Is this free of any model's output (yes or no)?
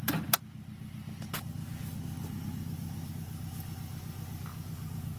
yes